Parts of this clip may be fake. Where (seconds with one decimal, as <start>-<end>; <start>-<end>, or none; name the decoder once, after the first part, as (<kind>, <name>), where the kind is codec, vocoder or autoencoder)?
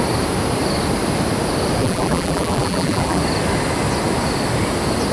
1.8-3.2 (vocoder, BigVGAN v2)